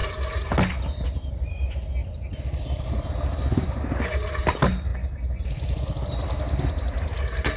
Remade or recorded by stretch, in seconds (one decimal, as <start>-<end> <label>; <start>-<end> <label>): 0.0-7.6 recorded